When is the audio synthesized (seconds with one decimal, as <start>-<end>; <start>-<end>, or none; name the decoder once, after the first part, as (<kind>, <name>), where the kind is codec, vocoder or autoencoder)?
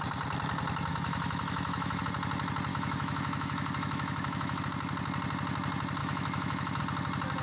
0.9-2.0 (autoencoder, DAC-VAE); 2.7-4.6; 6.0-6.8